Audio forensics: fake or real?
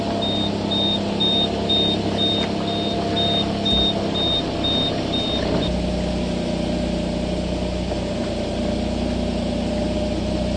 real